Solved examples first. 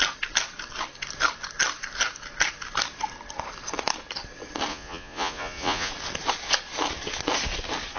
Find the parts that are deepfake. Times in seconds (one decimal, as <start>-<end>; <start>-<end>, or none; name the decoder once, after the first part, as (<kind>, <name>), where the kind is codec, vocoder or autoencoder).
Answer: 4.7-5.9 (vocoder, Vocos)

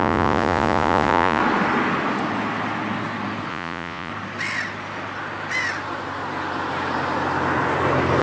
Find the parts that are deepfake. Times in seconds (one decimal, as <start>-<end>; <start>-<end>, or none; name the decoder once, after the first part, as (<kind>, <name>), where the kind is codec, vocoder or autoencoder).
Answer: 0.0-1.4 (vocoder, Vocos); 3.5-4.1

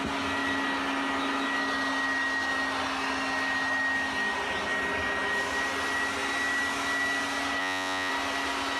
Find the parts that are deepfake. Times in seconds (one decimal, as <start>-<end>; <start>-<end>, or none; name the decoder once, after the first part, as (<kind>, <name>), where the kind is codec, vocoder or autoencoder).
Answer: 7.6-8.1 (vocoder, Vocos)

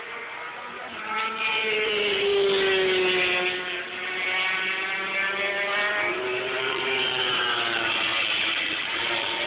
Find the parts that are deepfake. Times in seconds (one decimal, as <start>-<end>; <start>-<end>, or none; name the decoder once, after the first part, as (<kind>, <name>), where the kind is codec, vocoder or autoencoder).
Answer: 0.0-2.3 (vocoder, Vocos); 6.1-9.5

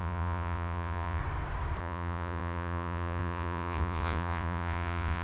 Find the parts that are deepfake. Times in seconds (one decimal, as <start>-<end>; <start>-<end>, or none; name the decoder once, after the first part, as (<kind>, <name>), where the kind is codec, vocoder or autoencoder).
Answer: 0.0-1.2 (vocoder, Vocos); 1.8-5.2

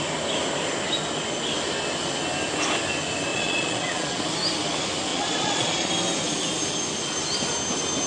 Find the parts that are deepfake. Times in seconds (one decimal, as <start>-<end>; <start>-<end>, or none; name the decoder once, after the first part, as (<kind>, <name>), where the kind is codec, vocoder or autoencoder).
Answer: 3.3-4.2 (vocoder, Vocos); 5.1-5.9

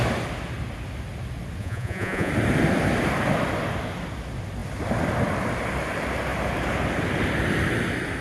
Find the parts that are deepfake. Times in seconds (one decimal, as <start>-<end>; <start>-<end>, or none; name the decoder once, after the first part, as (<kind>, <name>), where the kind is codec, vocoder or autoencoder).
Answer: 1.6-2.3 (vocoder, Vocos)